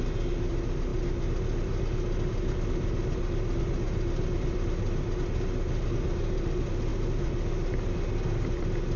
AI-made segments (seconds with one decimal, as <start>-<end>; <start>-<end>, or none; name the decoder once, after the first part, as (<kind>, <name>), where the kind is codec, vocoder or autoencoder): none